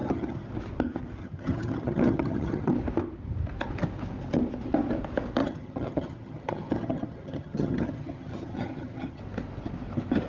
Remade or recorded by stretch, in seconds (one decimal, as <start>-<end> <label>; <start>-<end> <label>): 0.0-0.5 remade; 0.5-1.2 recorded; 1.2-2.7 remade; 2.7-5.4 recorded; 5.4-9.2 remade; 9.2-10.3 recorded